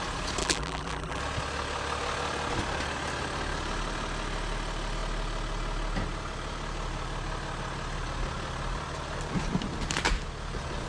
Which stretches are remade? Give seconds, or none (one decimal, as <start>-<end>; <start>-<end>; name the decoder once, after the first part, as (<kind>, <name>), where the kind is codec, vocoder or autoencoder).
0.4-1.2 (vocoder, BigVGAN v2)